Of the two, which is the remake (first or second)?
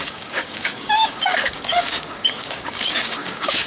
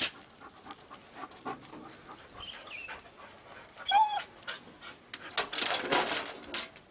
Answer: first